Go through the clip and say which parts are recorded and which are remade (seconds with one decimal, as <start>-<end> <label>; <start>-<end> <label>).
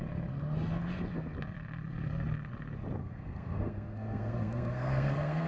0.0-3.0 recorded; 3.0-5.5 remade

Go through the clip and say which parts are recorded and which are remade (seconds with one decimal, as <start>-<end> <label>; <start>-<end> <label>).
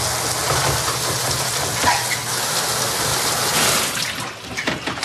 0.0-3.1 recorded; 3.1-5.0 remade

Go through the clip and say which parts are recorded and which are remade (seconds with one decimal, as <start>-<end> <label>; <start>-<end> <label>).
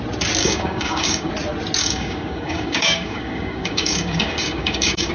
0.0-0.4 recorded; 0.4-1.3 remade; 1.3-1.8 recorded; 1.8-5.1 remade